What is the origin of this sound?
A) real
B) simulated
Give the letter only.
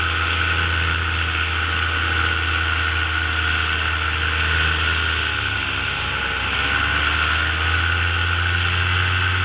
A